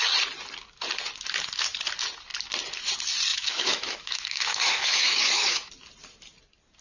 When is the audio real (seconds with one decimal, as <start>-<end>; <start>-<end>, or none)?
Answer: 0.0-3.3; 5.7-6.8